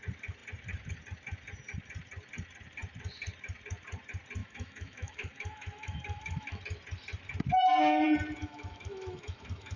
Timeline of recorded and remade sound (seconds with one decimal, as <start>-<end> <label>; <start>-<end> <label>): 0.0-4.4 recorded; 4.4-6.6 remade; 6.6-8.4 recorded; 8.4-9.8 remade